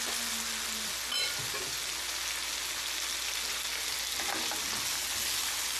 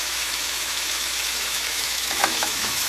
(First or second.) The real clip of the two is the first